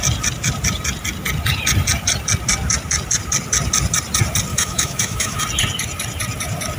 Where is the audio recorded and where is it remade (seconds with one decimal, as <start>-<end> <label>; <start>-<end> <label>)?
0.0-4.5 recorded; 4.5-5.4 remade; 5.4-6.8 recorded